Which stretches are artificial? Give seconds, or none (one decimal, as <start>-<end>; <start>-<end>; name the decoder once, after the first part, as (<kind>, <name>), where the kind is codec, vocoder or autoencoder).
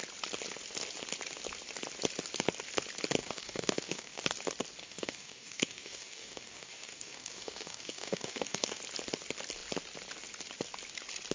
3.2-4.2 (codec, DAC); 4.8-8.8